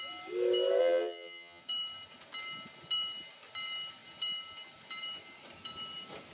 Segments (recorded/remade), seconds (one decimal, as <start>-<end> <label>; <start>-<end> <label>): 0.0-0.8 recorded; 0.8-1.6 remade; 1.6-6.3 recorded